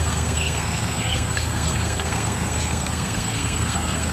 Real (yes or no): no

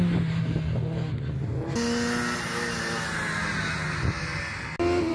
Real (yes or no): yes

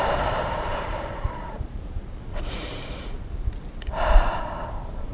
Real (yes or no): no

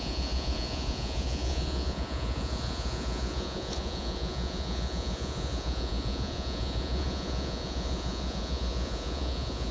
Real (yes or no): no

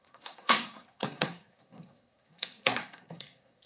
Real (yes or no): no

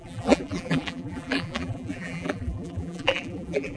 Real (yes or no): no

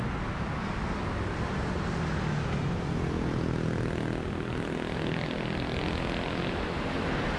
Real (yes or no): yes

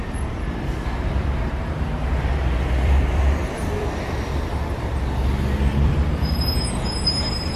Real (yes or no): no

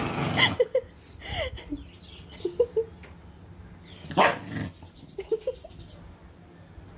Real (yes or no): yes